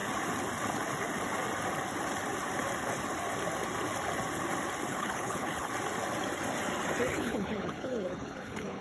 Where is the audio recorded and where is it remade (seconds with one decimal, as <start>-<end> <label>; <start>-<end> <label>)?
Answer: 0.0-4.9 recorded; 4.9-5.7 remade; 5.7-7.1 recorded; 7.1-8.8 remade

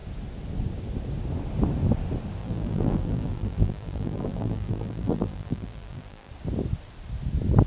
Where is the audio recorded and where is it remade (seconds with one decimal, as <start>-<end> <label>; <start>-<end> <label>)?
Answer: 0.0-2.4 recorded; 2.4-6.3 remade; 6.3-7.7 recorded

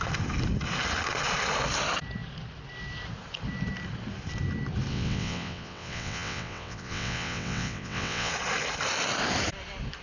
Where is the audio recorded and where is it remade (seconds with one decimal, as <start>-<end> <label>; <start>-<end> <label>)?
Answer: 0.0-4.9 recorded; 4.9-8.3 remade; 8.3-10.0 recorded

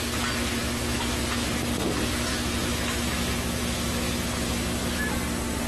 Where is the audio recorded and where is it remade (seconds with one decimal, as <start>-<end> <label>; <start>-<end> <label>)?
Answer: 0.0-0.6 recorded; 0.6-1.2 remade; 1.2-2.3 recorded; 2.3-4.2 remade; 4.2-5.7 recorded

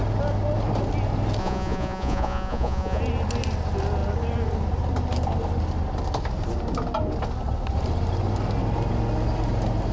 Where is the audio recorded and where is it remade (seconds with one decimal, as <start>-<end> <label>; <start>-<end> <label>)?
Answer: 0.0-1.4 recorded; 1.4-3.0 remade; 3.0-9.9 recorded

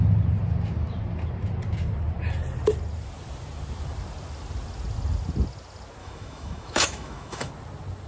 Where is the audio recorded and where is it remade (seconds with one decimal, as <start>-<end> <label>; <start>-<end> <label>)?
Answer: 0.0-6.0 recorded; 6.0-7.5 remade; 7.5-8.1 recorded